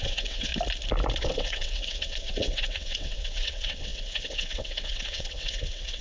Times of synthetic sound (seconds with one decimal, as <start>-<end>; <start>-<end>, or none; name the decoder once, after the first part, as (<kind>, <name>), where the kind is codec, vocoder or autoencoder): 0.0-0.5 (vocoder, WaveNeXt); 1.2-6.0